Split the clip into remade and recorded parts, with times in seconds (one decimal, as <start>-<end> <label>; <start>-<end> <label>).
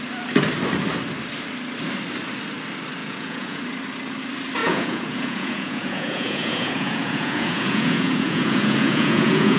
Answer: 0.0-3.0 recorded; 3.0-3.6 remade; 3.6-4.6 recorded; 4.6-9.6 remade